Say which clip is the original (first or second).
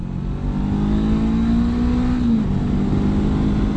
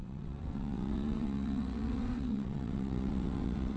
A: first